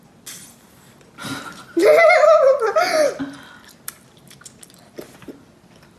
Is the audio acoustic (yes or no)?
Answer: yes